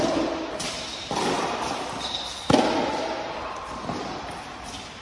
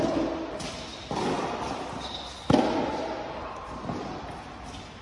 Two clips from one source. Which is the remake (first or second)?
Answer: first